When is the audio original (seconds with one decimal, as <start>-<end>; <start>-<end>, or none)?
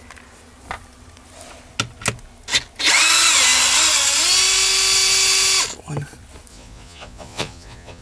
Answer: 0.0-6.5